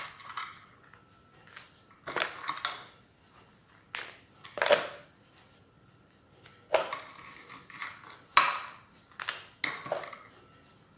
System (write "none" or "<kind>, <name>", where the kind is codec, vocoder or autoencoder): none